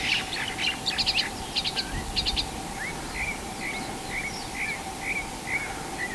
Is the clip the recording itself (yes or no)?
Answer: yes